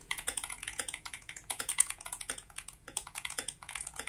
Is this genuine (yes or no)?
no